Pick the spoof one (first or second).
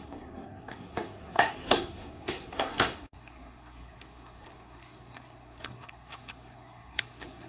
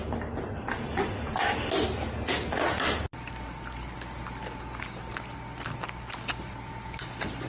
first